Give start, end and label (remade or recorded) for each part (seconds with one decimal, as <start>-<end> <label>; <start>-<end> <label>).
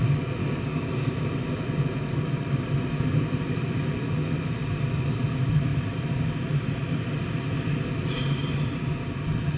0.0-0.4 recorded; 0.4-1.2 remade; 1.2-9.6 recorded